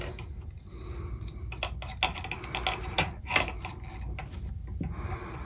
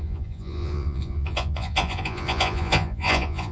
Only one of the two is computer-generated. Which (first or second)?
second